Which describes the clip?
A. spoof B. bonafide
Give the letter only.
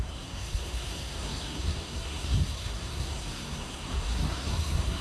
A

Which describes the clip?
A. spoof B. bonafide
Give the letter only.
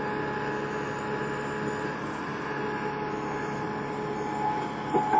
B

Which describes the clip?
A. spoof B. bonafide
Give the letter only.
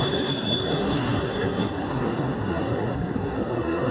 A